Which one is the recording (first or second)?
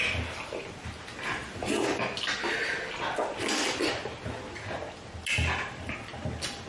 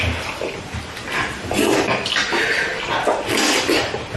first